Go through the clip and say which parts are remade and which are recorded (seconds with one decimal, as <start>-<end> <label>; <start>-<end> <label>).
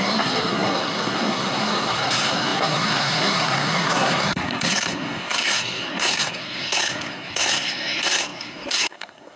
0.0-9.4 remade